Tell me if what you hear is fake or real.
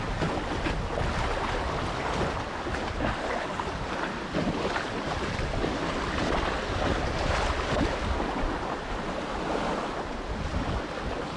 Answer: real